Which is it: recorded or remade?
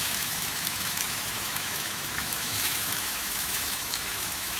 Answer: remade